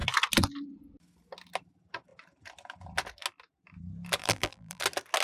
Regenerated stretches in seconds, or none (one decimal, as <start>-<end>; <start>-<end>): 4.2-4.8